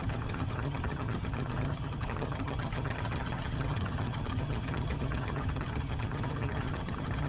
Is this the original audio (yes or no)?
no